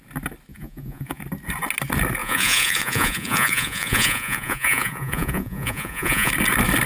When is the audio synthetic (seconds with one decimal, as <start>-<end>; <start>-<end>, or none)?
0.5-1.2; 2.2-6.3